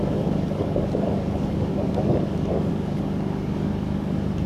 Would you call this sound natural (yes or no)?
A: no